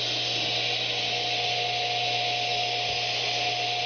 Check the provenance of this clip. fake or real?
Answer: real